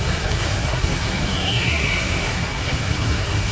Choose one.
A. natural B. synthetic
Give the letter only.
B